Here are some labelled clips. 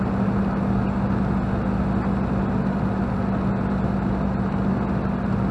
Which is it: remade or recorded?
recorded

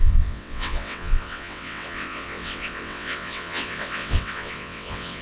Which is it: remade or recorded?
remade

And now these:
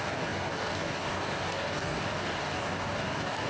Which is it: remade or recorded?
remade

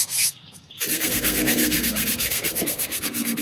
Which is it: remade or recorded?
remade